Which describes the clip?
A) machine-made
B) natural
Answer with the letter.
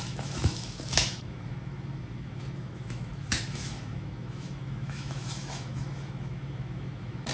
A